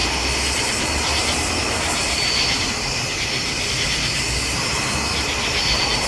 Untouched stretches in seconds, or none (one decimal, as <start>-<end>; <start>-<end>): 0.0-6.1